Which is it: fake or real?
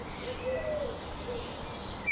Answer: real